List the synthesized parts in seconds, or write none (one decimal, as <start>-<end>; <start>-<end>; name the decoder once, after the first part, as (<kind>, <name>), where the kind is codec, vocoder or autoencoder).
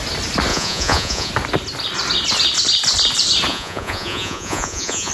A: 0.5-1.3 (vocoder, Vocos); 3.5-5.1